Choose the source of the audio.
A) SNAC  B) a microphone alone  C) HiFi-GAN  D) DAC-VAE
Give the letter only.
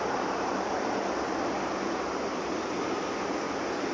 B